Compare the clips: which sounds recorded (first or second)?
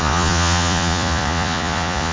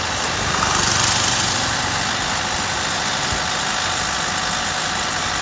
second